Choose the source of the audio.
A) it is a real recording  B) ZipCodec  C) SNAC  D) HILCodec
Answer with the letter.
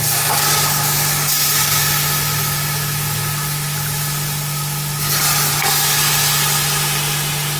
A